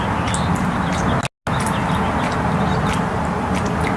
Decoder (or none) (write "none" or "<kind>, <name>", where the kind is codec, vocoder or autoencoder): none